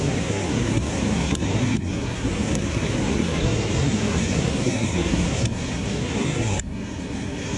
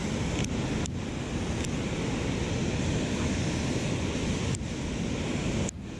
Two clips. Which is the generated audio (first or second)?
first